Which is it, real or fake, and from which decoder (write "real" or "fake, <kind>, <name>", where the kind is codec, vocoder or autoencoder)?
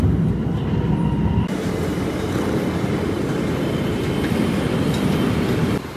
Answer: real